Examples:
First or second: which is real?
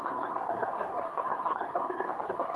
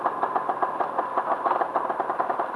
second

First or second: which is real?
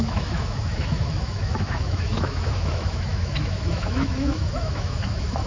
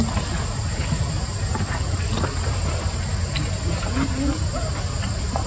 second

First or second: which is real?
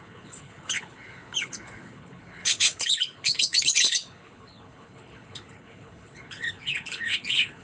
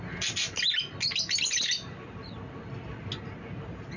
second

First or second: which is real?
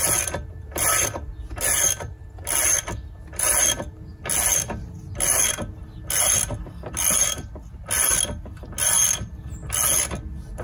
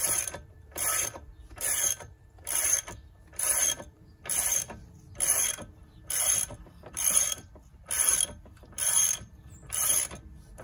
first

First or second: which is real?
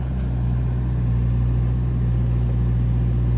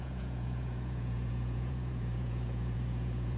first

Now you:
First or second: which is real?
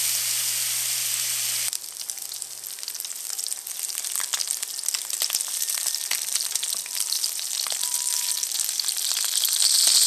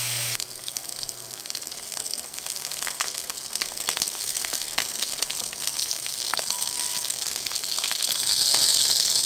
first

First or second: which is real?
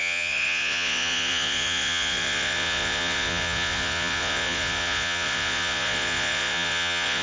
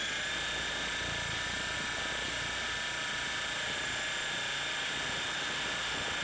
second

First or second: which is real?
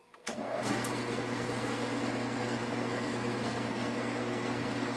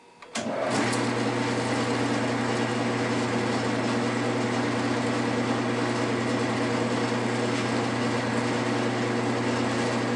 second